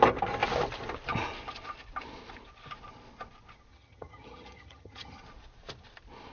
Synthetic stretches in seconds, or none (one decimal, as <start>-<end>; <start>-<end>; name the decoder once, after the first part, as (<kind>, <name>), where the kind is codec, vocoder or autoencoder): 3.7-5.2 (vocoder, HiFi-GAN)